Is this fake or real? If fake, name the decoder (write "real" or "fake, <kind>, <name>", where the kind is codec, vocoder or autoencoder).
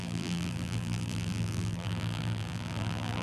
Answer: fake, vocoder, BigVGAN v2